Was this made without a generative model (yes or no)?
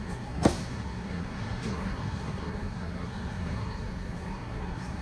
no